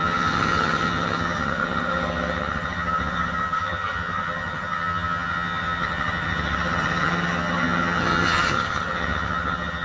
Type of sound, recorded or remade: remade